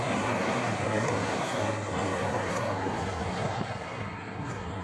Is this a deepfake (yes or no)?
yes